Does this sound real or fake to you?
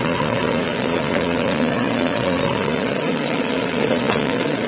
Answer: fake